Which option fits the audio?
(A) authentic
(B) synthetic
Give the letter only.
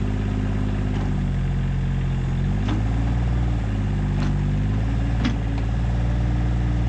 A